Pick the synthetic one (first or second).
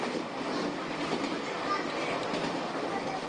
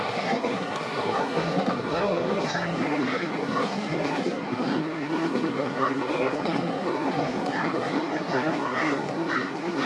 second